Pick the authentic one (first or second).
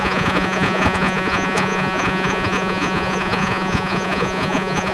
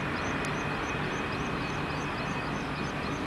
second